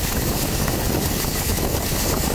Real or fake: fake